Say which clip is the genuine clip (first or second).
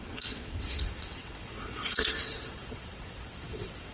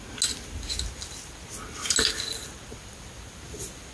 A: second